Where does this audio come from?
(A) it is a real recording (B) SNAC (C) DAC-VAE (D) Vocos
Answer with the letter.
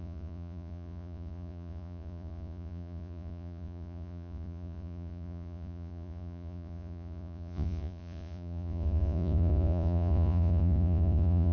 D